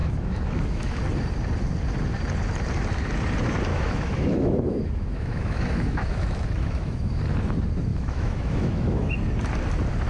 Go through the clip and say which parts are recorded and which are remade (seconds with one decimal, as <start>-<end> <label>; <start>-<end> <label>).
0.0-1.0 remade; 1.0-3.7 recorded; 3.7-7.2 remade; 7.2-7.9 recorded; 7.9-9.1 remade; 9.1-10.1 recorded